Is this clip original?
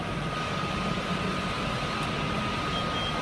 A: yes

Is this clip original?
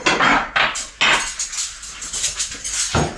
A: yes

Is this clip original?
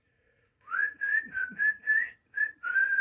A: no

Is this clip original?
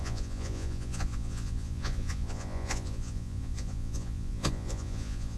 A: no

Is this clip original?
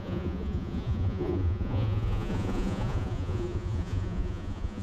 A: no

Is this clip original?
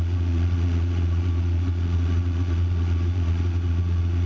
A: no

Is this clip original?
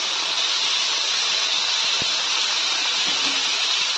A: yes